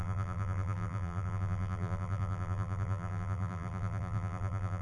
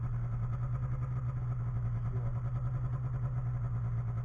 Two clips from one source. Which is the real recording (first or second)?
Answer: second